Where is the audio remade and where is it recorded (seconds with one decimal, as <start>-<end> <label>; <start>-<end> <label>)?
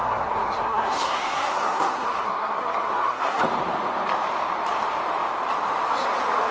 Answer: 0.0-3.4 remade; 3.4-6.5 recorded